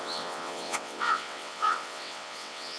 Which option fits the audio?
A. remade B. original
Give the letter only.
A